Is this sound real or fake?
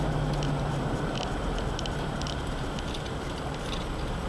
real